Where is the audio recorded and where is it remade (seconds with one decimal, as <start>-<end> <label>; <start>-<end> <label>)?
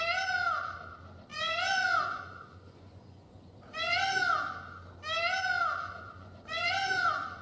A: 0.0-1.3 recorded; 1.3-4.2 remade; 4.2-5.8 recorded; 5.8-7.4 remade